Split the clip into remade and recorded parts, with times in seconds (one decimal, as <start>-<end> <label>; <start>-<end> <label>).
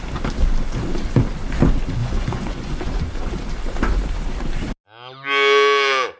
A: 0.0-2.0 recorded; 2.0-2.9 remade; 2.9-6.2 recorded